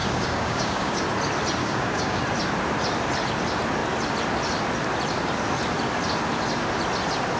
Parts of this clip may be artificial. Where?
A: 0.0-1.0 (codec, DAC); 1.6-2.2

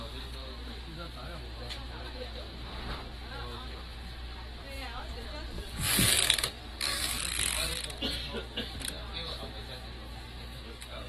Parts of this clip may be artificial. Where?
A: 0.0-0.4 (codec, DAC); 5.5-7.7; 10.1-11.1

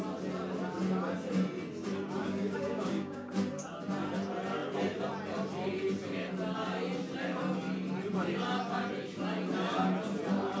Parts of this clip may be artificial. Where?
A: 2.2-3.3 (codec, DAC)

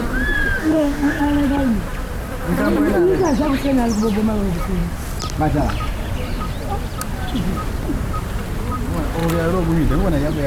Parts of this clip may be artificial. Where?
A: 0.6-1.2 (codec, DAC)

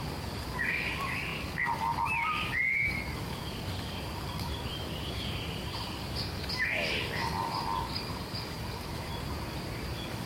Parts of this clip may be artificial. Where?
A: 0.0-9.1 (codec, DAC); 9.7-10.3